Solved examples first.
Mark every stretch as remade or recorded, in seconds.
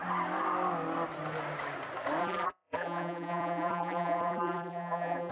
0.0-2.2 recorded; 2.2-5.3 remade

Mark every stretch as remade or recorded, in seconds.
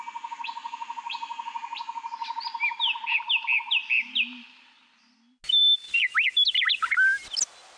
0.0-7.8 recorded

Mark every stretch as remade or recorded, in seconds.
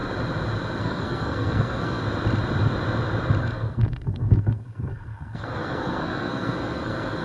0.0-0.8 recorded; 0.8-2.0 remade; 2.0-3.4 recorded; 3.4-7.2 remade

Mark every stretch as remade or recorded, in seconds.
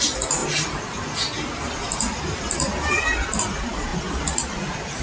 0.0-5.0 recorded